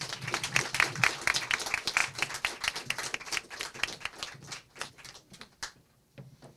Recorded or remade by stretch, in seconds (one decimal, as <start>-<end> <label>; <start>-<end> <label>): 0.0-6.6 recorded